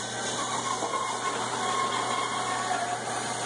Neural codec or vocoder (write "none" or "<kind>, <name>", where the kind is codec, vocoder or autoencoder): none